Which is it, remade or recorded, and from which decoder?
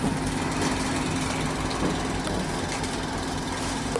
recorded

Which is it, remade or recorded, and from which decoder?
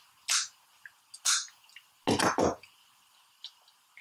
recorded